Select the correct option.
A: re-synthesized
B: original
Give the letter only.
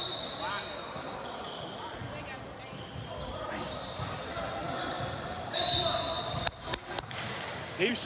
A